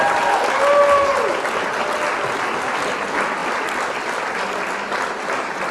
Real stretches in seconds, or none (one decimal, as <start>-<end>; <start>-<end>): 0.0-5.7